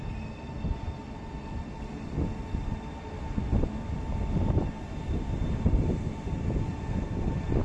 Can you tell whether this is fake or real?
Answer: real